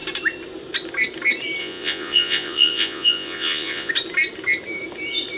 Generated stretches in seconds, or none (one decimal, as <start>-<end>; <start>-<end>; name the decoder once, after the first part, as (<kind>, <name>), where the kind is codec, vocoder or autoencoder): 1.6-3.9 (vocoder, Vocos)